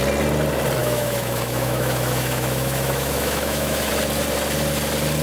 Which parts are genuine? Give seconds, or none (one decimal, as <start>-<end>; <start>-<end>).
0.0-0.8; 3.9-5.2